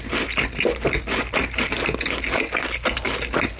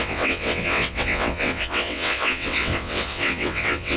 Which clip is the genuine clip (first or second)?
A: first